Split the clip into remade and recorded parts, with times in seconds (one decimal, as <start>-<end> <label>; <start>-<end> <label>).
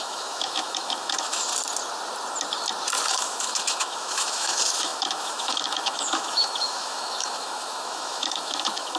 0.0-1.5 remade; 1.5-3.1 recorded; 3.1-9.0 remade